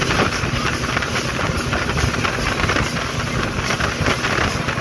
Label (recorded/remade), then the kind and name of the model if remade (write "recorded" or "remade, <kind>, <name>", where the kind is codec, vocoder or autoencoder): recorded